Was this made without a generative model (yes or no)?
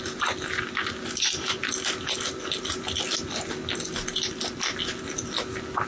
yes